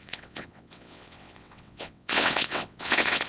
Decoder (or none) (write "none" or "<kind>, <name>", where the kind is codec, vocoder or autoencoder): vocoder, WaveNeXt